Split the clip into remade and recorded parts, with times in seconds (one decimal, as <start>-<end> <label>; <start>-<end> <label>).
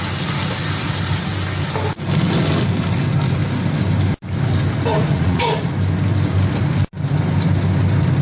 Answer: 0.0-4.9 recorded; 4.9-5.7 remade; 5.7-8.2 recorded